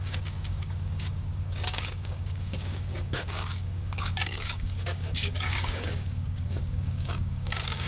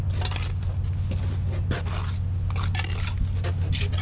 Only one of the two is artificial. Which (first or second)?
first